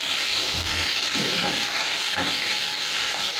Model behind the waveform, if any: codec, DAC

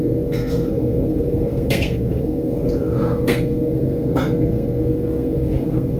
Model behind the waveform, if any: codec, SNAC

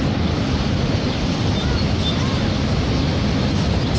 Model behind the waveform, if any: none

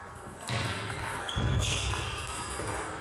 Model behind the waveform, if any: codec, SNAC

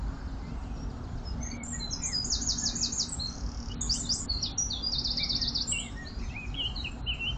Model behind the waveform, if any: none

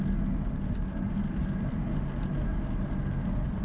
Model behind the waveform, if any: none